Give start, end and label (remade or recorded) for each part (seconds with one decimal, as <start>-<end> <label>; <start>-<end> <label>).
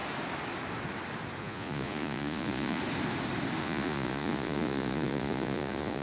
0.0-1.4 recorded; 1.4-2.8 remade; 2.8-3.6 recorded; 3.6-6.0 remade